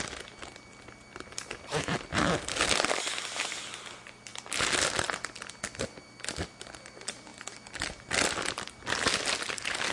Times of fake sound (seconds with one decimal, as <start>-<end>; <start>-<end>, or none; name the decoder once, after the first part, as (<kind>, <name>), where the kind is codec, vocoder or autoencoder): none